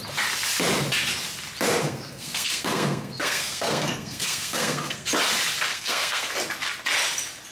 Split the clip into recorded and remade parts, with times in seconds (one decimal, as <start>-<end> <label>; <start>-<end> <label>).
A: 0.0-1.8 recorded; 1.8-5.1 remade; 5.1-5.7 recorded; 5.7-6.3 remade; 6.3-7.5 recorded